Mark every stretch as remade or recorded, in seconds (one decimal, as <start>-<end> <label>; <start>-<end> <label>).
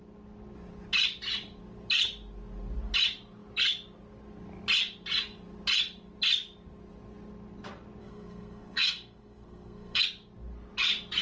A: 0.0-8.0 recorded; 8.0-10.0 remade; 10.0-11.2 recorded